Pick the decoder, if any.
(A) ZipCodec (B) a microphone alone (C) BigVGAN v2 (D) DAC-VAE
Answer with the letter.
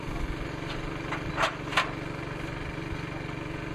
B